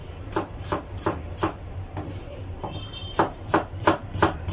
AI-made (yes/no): yes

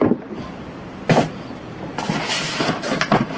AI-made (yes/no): yes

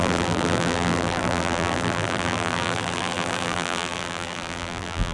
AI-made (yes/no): yes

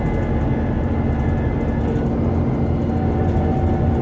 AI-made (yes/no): no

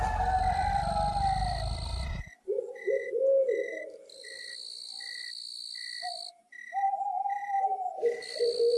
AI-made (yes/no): no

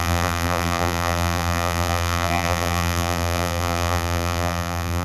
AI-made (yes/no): yes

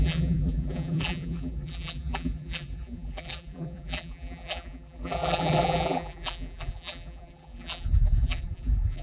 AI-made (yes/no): yes